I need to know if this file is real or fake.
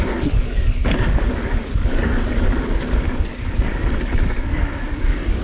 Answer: fake